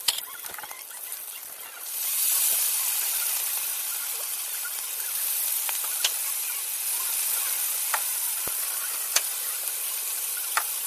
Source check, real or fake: real